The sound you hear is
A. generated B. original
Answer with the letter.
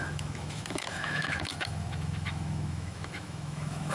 A